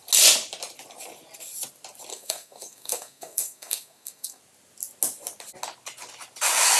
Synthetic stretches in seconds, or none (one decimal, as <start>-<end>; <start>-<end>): 2.1-4.4